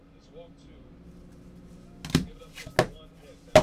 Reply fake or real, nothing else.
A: real